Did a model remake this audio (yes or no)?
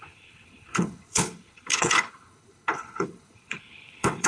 yes